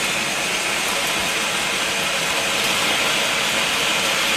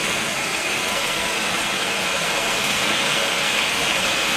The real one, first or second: first